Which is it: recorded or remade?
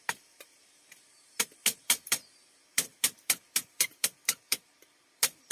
remade